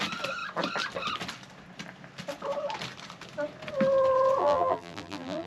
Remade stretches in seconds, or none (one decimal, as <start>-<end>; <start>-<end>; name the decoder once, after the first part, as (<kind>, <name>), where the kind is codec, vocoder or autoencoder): 4.4-5.5 (vocoder, BigVGAN v2)